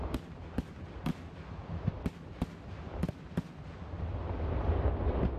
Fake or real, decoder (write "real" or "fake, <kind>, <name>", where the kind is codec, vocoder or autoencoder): real